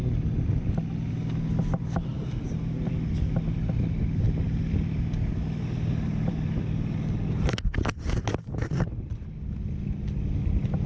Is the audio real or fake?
real